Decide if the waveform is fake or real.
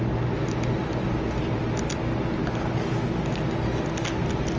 real